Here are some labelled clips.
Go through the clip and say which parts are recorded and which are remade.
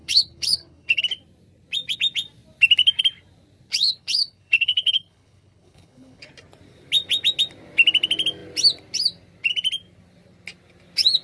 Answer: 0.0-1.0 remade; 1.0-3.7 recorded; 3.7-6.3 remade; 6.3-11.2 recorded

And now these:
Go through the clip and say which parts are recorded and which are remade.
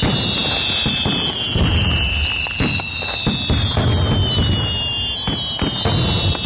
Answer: 0.0-6.5 recorded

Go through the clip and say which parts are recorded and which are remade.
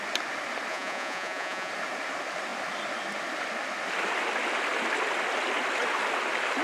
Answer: 0.0-0.7 recorded; 0.7-1.7 remade; 1.7-6.6 recorded